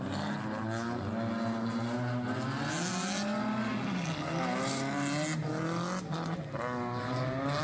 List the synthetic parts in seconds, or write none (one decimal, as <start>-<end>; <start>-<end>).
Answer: none